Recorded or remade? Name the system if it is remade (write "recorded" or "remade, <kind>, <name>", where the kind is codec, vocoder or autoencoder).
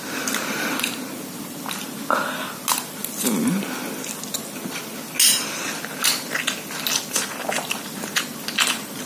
recorded